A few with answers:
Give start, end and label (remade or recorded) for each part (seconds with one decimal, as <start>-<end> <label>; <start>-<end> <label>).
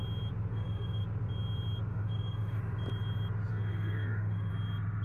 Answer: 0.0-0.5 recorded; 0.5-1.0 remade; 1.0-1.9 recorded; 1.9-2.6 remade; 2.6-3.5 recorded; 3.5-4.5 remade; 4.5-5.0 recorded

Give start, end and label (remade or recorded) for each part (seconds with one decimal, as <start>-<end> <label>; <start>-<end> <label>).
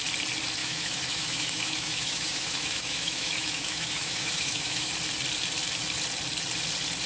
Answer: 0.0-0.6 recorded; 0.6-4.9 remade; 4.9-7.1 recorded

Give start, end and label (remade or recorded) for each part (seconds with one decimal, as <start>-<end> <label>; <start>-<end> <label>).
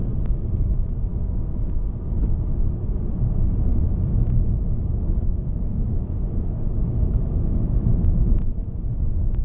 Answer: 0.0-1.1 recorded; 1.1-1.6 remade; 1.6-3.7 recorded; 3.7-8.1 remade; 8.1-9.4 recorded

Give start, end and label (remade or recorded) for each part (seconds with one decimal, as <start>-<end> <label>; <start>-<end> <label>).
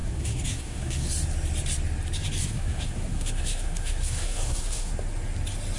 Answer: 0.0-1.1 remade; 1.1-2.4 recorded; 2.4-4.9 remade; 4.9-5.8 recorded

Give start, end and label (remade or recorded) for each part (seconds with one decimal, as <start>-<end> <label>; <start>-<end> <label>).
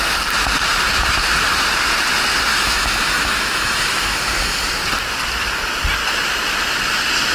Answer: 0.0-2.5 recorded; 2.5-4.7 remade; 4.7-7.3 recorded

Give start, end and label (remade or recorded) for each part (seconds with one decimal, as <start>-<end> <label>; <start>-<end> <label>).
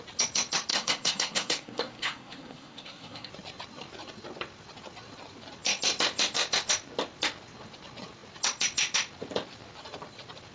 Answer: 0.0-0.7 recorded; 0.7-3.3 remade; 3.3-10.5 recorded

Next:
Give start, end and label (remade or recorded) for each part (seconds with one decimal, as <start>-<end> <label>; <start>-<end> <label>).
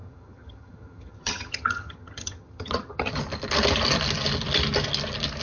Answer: 0.0-3.2 remade; 3.2-5.4 recorded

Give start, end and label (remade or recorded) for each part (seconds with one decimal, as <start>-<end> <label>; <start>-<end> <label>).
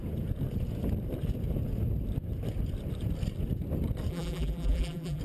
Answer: 0.0-4.1 recorded; 4.1-5.2 remade